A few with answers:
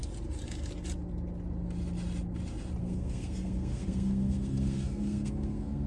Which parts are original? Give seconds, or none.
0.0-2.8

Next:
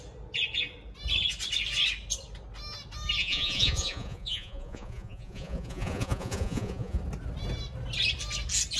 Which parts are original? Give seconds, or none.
0.0-3.2; 7.0-8.8

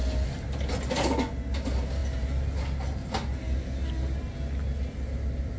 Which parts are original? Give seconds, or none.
0.0-5.6

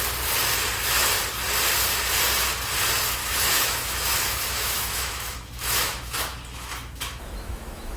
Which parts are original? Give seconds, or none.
0.0-3.2

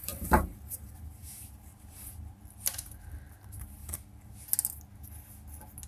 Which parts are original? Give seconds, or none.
2.4-3.8; 4.3-5.9